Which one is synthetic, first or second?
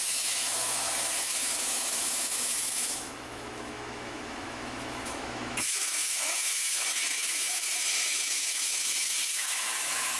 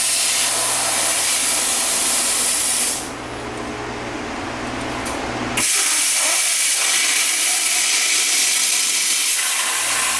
first